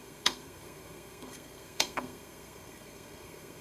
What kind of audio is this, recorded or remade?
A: remade